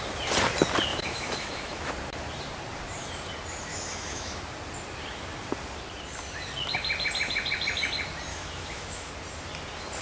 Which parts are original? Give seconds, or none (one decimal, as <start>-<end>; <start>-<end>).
0.0-0.9; 1.9-3.7; 4.4-8.3; 9.1-10.0